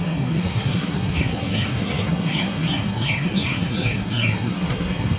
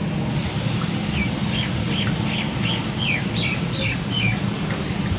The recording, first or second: second